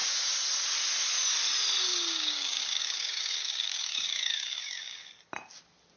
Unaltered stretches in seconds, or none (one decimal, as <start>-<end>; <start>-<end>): 0.0-1.9; 5.1-6.0